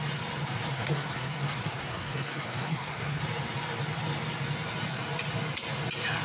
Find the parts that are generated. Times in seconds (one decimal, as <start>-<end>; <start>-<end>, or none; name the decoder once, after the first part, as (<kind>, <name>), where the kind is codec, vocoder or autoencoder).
0.7-3.2 (codec, SNAC)